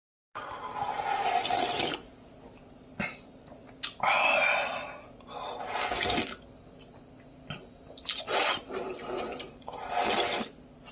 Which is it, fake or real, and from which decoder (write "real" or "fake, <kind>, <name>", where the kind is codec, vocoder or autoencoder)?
real